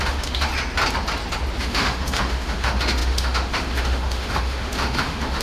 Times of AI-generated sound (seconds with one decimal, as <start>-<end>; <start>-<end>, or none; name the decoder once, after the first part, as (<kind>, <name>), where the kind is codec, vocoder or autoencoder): 0.0-0.5 (autoencoder, DAC-VAE); 1.6-5.4